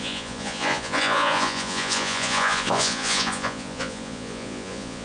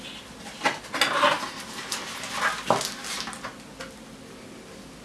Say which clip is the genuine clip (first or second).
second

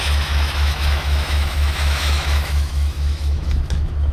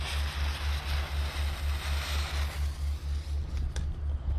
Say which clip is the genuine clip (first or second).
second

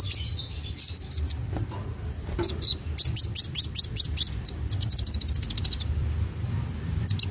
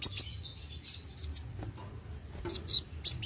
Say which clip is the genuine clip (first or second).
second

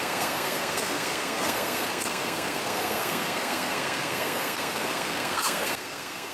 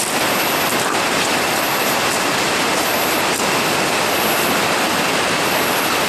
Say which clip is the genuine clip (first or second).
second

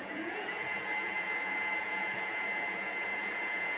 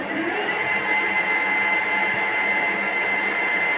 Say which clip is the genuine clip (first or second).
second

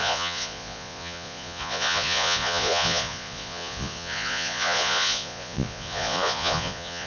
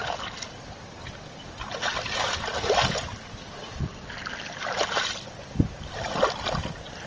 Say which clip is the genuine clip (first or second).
second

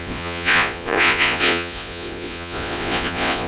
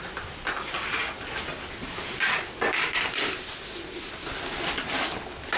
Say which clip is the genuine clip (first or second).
second